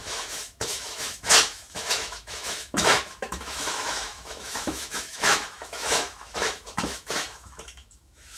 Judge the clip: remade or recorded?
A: remade